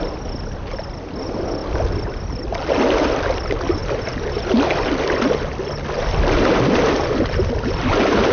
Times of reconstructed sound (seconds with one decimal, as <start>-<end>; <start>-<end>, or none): none